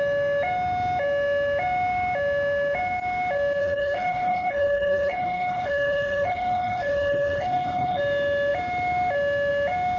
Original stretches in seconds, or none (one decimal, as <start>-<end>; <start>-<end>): 0.0-3.6; 8.0-10.0